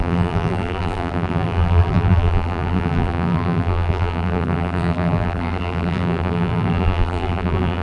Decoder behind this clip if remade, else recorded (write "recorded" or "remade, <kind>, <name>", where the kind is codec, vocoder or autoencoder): remade, vocoder, BigVGAN v2